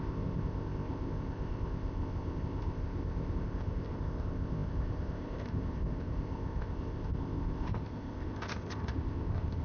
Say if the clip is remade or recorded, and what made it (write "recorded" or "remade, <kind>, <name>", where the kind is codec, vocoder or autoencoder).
remade, codec, ZipCodec